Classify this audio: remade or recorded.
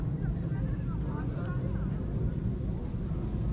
recorded